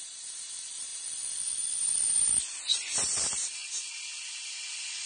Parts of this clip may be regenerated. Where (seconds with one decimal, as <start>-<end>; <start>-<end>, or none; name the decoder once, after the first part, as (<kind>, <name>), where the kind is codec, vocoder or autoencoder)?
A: none